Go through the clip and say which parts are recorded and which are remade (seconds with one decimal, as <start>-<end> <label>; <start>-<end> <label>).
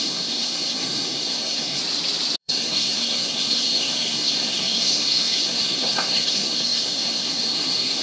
0.0-1.8 remade; 1.8-2.4 recorded; 2.4-8.0 remade